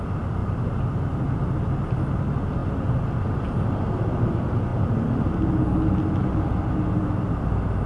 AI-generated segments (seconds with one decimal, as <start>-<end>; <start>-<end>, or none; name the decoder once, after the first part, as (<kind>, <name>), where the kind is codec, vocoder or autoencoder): none